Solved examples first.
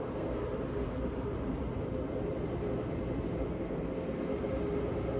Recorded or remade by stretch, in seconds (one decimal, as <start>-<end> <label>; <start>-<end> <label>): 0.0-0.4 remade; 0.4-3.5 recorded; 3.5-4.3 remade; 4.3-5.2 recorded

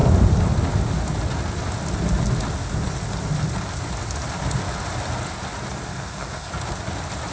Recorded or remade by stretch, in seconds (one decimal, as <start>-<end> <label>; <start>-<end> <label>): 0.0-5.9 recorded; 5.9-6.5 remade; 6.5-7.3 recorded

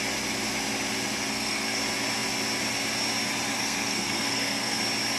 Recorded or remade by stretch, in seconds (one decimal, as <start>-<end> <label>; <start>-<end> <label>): 0.0-1.3 recorded; 1.3-1.8 remade; 1.8-3.5 recorded; 3.5-4.8 remade; 4.8-5.2 recorded